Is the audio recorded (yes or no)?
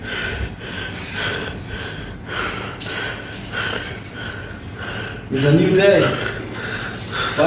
yes